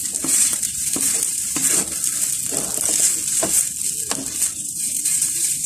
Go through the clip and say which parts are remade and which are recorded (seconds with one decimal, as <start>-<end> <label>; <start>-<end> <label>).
0.0-1.6 remade; 1.6-4.5 recorded; 4.5-5.7 remade